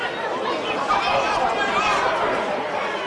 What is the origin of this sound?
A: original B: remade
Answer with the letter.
A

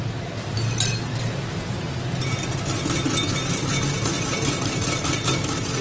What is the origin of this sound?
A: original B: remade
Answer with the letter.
A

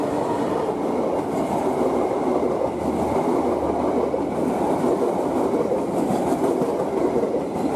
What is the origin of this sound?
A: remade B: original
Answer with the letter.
B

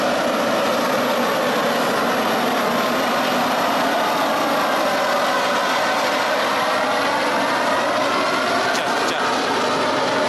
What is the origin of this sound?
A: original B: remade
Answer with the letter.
A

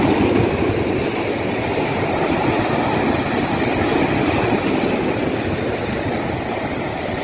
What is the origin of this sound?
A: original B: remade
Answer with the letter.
A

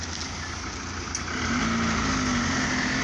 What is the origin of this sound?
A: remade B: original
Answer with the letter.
B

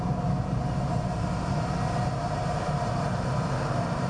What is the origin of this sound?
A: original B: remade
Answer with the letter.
B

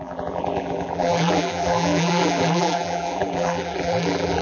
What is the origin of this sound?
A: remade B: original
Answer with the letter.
A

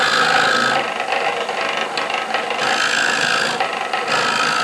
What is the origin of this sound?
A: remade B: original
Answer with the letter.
B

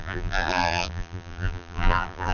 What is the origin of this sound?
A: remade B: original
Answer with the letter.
A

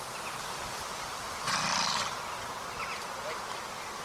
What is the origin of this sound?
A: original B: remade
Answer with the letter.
A